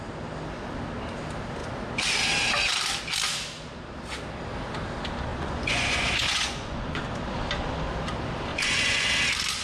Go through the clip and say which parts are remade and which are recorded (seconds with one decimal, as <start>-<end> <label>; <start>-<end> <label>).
0.0-5.3 recorded; 5.3-7.0 remade; 7.0-8.5 recorded; 8.5-9.1 remade; 9.1-9.6 recorded